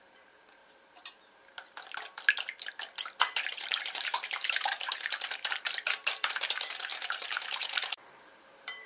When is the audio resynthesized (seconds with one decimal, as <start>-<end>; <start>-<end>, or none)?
0.0-0.6; 3.8-8.9